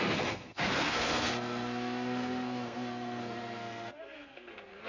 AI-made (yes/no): yes